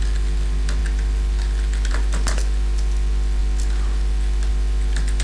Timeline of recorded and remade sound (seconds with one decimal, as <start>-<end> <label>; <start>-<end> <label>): 0.0-5.2 recorded